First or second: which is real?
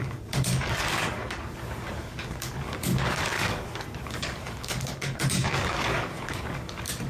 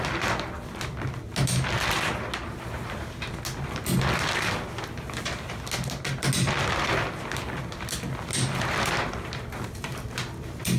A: second